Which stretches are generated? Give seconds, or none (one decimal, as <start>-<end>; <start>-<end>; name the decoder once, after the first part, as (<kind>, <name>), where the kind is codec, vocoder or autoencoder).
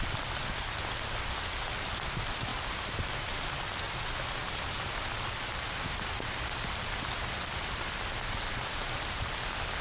none